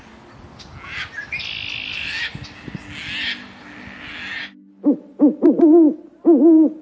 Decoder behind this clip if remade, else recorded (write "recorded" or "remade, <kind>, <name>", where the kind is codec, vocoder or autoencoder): recorded